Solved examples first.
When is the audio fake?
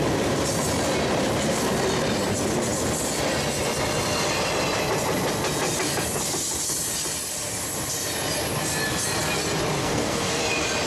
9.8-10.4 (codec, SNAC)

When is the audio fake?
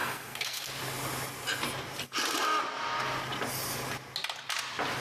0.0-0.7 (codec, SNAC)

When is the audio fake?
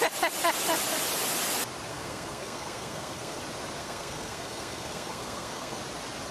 1.9-3.4 (codec, SNAC); 3.8-5.8